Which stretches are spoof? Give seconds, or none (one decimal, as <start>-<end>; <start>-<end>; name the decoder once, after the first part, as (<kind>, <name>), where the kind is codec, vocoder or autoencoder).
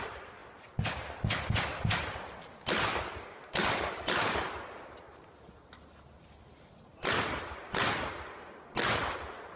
none